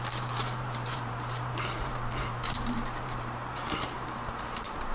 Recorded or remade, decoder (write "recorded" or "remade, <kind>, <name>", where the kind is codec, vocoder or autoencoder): remade, vocoder, BigVGAN v2